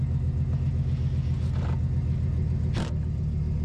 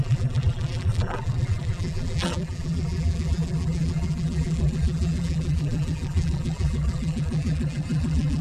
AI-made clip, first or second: second